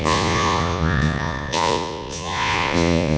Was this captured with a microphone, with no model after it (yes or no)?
no